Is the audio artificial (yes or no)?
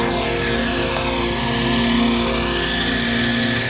no